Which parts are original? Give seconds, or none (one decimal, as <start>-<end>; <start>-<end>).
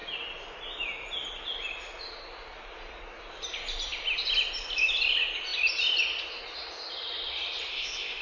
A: 0.0-7.7